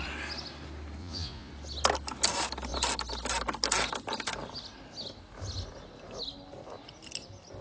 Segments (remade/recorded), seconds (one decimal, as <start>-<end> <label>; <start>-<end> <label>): 0.0-1.0 recorded; 1.0-1.5 remade; 1.5-7.6 recorded